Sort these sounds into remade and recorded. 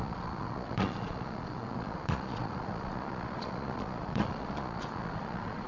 remade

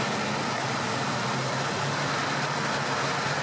recorded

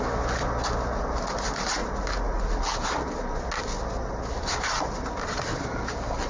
recorded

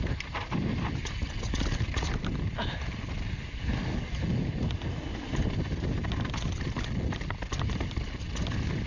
recorded